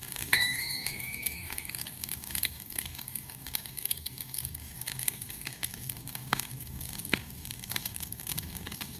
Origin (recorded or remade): remade